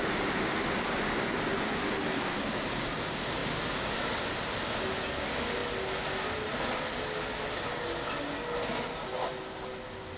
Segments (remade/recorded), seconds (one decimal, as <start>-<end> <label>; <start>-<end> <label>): 0.0-10.2 recorded